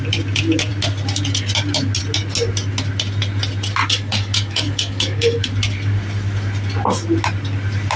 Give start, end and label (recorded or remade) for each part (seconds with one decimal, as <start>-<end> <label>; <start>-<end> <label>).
0.0-3.8 recorded; 3.8-5.5 remade; 5.5-8.0 recorded